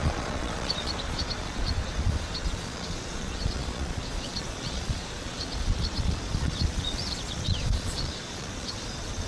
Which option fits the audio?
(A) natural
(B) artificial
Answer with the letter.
B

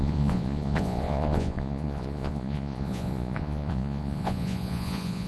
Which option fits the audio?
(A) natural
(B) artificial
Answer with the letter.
B